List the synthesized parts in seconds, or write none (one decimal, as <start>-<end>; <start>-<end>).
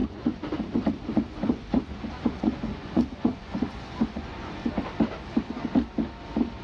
0.0-0.6; 1.1-4.7